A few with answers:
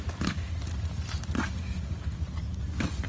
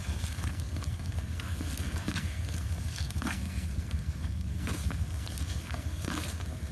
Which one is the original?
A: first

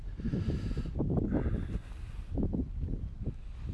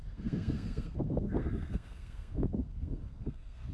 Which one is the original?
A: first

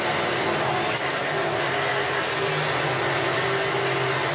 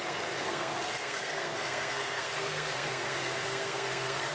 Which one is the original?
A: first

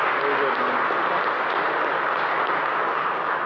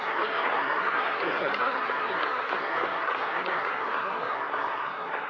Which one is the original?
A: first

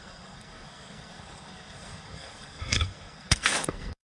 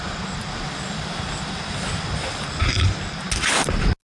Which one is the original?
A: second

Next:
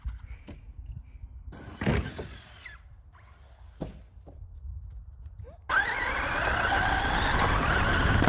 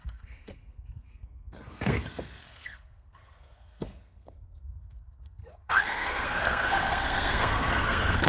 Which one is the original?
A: first